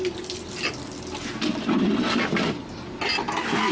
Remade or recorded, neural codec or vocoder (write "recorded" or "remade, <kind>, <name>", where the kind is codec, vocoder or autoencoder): recorded